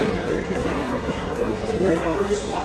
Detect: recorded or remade remade